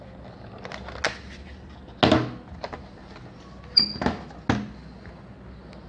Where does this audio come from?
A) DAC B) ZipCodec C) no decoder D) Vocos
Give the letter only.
C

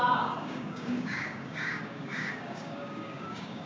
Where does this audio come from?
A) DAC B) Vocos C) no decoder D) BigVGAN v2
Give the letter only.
A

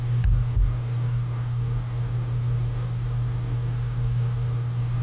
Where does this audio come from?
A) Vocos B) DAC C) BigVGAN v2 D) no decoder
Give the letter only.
B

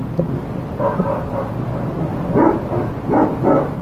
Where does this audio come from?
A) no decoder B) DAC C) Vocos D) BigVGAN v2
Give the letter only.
A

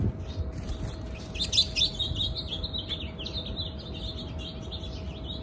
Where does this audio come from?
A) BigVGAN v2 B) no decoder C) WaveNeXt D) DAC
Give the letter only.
B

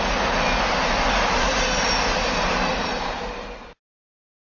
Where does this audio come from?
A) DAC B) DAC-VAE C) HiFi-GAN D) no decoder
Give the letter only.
D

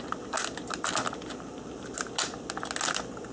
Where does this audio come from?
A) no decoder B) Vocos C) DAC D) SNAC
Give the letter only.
A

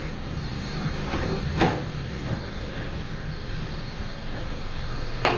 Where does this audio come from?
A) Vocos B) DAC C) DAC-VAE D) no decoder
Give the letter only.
B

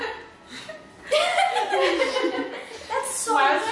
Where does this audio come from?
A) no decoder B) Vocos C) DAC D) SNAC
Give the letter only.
A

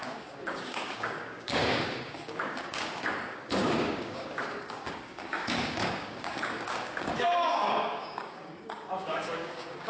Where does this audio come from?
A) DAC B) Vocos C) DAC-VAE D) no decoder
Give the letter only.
A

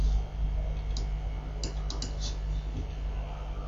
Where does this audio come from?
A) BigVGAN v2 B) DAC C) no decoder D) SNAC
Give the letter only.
C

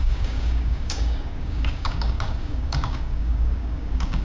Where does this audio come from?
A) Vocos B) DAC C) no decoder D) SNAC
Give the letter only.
B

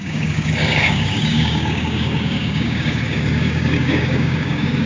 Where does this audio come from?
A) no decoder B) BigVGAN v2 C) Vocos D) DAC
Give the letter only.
D